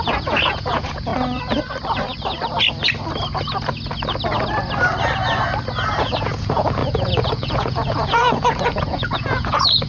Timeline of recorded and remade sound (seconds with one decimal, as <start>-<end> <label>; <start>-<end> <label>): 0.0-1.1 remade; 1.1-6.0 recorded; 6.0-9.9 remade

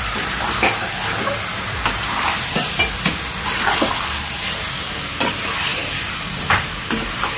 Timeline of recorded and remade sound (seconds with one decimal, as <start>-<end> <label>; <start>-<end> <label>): 0.0-7.4 recorded

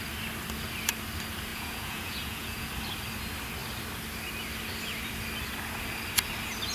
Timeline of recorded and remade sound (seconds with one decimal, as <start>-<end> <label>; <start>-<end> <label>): 0.0-1.5 recorded; 1.5-2.7 remade; 2.7-6.7 recorded

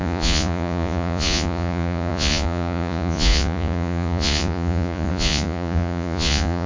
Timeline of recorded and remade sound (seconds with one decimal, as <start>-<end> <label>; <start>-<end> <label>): 0.0-6.7 remade

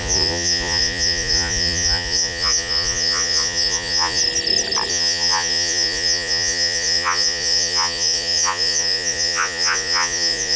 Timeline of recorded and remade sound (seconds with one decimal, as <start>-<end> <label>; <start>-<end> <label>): 0.0-4.2 remade; 4.2-4.9 recorded; 4.9-10.6 remade